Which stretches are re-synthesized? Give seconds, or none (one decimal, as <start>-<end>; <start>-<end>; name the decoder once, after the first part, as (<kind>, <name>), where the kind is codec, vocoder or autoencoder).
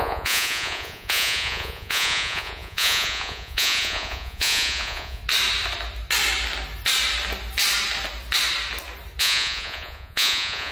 0.0-5.2 (vocoder, Vocos); 9.2-10.7